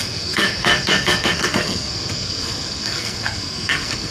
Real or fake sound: fake